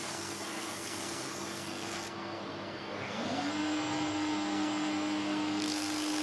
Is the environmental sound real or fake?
fake